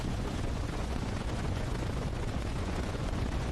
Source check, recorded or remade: remade